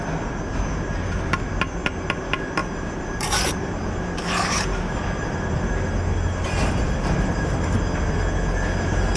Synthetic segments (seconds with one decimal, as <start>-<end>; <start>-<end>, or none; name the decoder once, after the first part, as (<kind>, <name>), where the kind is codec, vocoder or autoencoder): 2.6-5.0 (vocoder, BigVGAN v2)